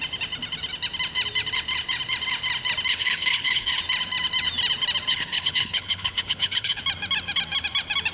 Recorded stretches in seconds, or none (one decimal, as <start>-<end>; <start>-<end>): 0.0-2.9; 3.8-5.1; 6.8-8.1